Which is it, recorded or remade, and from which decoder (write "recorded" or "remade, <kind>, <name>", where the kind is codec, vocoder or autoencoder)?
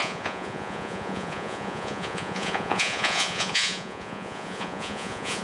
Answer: remade, vocoder, Vocos